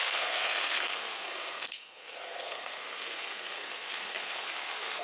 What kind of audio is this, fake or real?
fake